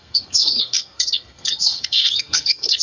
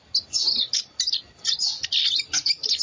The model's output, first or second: first